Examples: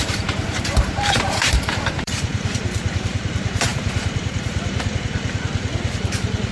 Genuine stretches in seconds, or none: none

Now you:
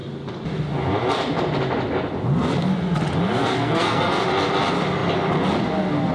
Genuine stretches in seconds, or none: 0.0-3.4; 4.2-6.1

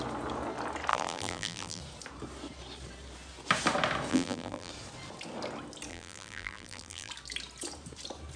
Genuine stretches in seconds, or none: 0.0-0.9; 1.8-4.1; 4.7-5.9; 7.1-8.4